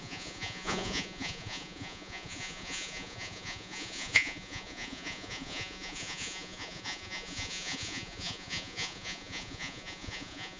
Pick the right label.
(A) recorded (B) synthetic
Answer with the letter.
B